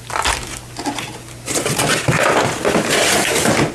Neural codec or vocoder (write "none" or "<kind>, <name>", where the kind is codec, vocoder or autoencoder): none